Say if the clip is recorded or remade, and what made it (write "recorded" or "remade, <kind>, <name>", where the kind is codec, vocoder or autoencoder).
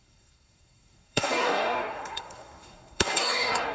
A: remade, codec, SNAC